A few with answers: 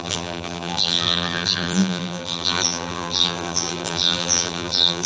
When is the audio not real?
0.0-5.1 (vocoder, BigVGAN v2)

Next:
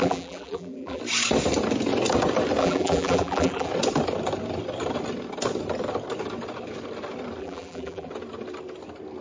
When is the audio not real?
0.0-1.0 (vocoder, BigVGAN v2); 2.6-3.7; 7.4-8.1

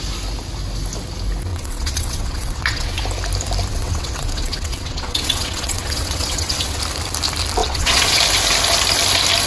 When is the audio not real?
1.5-3.0 (vocoder, WaveNeXt); 3.7-6.8; 7.6-8.2

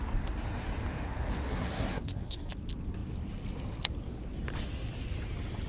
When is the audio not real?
1.3-2.5 (codec, SNAC)

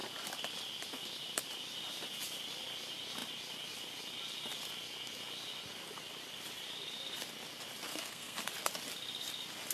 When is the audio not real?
7.9-8.4 (codec, SNAC)